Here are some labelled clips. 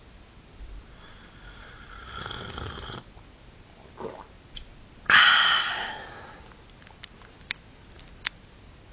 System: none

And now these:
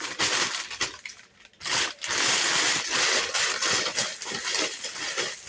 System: none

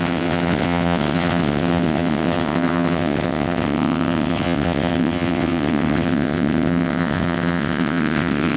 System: vocoder, WaveNeXt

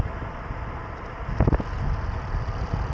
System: none